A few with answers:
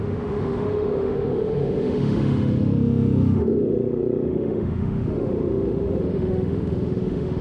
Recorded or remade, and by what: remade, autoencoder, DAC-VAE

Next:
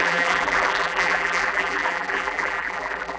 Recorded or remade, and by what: remade, vocoder, BigVGAN v2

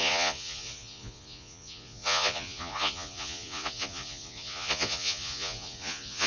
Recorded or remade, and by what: remade, vocoder, Vocos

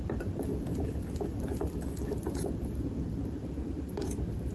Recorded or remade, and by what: remade, vocoder, BigVGAN v2